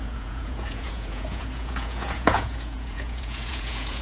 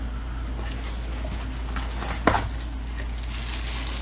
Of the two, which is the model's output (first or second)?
first